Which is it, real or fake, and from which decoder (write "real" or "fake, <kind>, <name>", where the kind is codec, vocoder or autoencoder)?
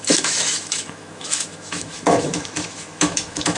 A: fake, autoencoder, DAC-VAE